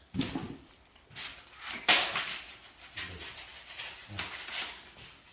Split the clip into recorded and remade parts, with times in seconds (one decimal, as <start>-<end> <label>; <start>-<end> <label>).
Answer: 0.0-5.3 recorded